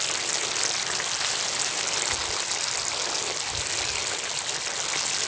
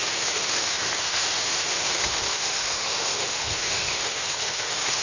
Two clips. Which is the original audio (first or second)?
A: first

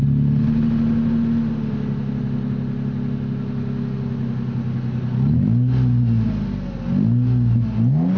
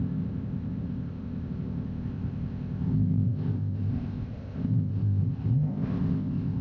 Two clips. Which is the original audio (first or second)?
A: first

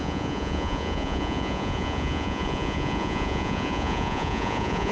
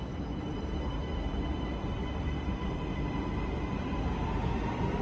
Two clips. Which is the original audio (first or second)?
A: second